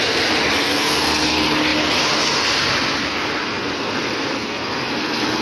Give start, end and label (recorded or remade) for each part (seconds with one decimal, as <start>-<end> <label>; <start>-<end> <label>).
0.0-5.4 recorded

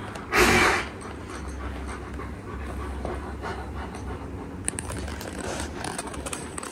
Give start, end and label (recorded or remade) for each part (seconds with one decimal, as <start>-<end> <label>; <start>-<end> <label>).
0.0-5.1 recorded; 5.1-6.7 remade

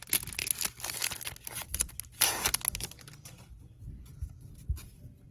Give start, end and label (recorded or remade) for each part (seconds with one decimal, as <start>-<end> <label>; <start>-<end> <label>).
0.0-5.3 recorded

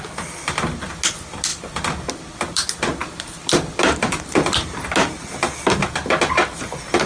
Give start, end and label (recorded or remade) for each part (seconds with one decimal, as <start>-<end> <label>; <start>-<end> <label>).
0.0-1.5 recorded; 1.5-2.1 remade; 2.1-3.0 recorded; 3.0-4.8 remade; 4.8-7.1 recorded

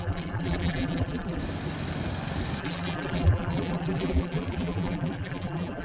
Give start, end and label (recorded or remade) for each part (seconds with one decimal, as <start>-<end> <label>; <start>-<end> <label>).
0.0-1.4 remade; 1.4-2.6 recorded; 2.6-5.8 remade